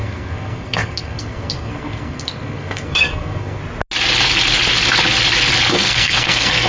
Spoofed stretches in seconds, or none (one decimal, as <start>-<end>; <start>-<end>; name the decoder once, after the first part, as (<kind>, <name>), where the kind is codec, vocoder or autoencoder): 0.0-3.6 (codec, SNAC); 5.7-6.7